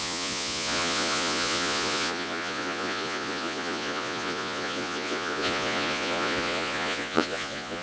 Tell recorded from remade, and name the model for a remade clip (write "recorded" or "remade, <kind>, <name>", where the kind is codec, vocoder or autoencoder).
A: remade, vocoder, Vocos